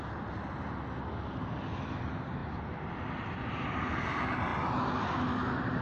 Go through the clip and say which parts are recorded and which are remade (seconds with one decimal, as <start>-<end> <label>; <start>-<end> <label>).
0.0-5.8 recorded